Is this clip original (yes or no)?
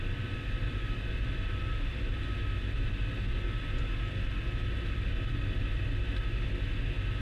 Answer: yes